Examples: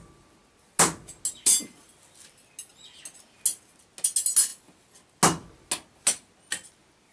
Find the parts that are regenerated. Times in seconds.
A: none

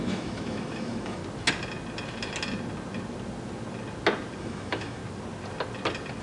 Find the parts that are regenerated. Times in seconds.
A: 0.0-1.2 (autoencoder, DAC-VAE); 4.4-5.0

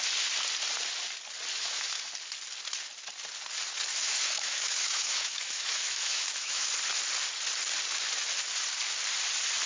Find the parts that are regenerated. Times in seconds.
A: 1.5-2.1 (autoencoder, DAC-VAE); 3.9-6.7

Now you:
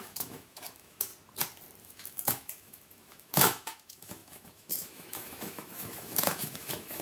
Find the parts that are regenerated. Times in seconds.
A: 0.0-1.1 (autoencoder, DAC-VAE); 1.8-7.0

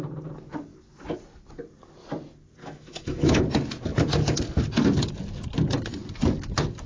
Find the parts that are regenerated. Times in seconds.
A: 2.6-3.3 (autoencoder, DAC-VAE)